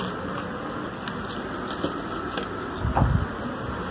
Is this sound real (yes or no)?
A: yes